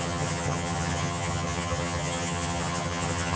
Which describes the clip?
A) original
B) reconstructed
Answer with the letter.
B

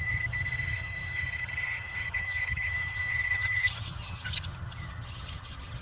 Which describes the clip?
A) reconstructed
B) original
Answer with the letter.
A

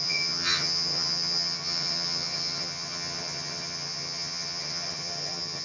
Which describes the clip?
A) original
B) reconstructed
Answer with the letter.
B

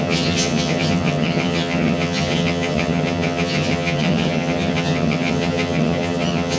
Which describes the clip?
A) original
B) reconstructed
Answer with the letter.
B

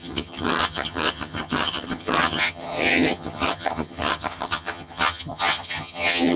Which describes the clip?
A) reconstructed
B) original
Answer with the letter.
A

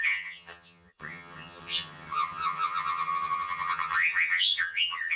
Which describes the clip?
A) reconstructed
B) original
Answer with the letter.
A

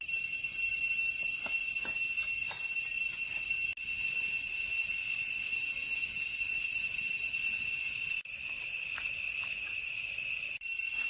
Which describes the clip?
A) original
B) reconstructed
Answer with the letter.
A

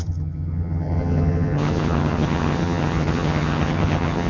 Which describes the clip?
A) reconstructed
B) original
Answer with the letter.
A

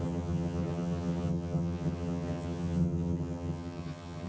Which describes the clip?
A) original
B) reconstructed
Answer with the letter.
B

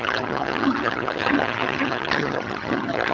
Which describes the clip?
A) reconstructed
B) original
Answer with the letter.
A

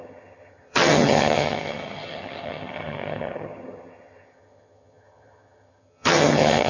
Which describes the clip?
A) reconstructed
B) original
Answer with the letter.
A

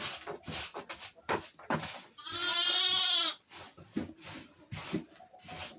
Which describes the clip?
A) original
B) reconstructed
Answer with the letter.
A